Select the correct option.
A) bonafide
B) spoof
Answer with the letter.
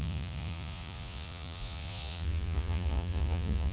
B